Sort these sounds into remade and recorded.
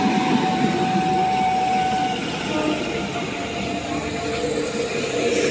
recorded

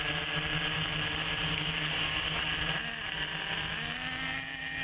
recorded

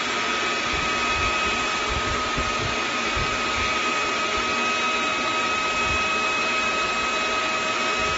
recorded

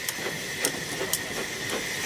recorded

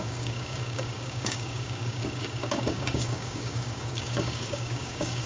remade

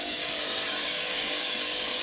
remade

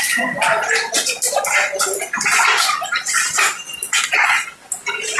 recorded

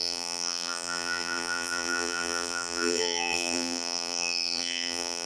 remade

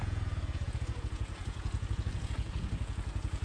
remade